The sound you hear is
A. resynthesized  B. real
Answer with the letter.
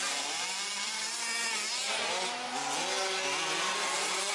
B